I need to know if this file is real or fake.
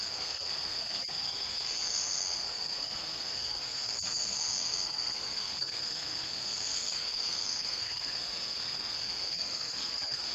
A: fake